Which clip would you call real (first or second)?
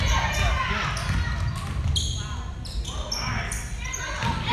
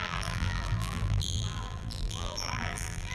first